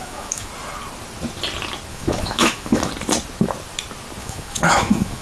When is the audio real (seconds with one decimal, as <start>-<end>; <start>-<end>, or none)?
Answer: 0.5-1.9; 2.9-4.2